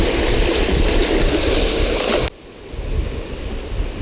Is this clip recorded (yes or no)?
yes